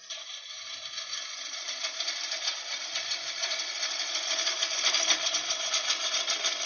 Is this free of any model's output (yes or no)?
no